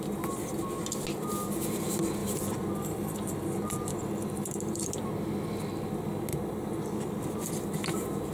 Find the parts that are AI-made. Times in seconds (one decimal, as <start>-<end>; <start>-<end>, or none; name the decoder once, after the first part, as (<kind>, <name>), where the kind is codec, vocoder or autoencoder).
2.2-4.9 (vocoder, BigVGAN v2); 6.3-7.1